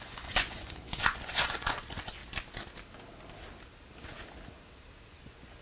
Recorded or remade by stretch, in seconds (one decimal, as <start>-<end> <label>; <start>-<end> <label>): 0.0-2.2 remade; 2.2-5.1 recorded; 5.1-5.6 remade